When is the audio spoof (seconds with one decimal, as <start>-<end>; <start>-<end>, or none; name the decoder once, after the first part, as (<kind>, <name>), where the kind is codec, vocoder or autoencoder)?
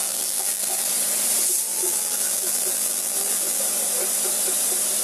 0.0-0.9 (vocoder, BigVGAN v2); 1.7-3.6